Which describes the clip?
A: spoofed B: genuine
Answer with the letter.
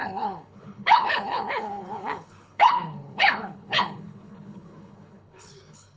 A